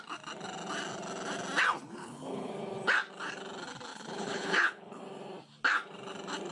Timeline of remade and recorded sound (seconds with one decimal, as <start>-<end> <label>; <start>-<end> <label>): 0.0-2.0 recorded; 2.0-2.5 remade; 2.5-3.9 recorded; 3.9-5.0 remade; 5.0-6.5 recorded